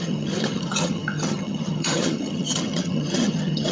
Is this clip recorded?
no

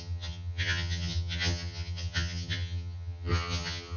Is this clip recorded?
no